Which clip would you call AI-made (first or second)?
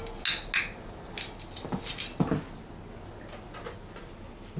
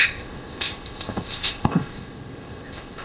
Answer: second